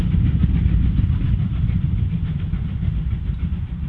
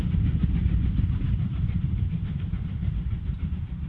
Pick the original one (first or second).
first